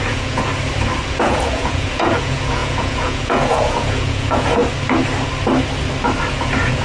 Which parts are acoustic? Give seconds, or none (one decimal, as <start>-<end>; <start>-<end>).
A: 0.5-1.1; 4.6-6.3